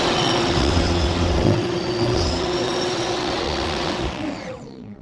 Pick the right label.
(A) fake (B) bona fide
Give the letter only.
A